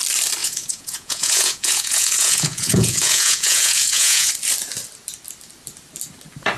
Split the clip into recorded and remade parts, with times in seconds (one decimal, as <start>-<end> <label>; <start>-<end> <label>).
0.0-0.4 recorded; 0.4-4.3 remade; 4.3-6.6 recorded